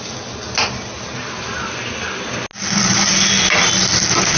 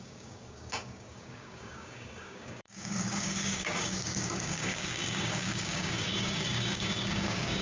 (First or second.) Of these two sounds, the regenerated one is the second